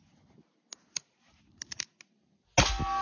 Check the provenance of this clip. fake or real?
real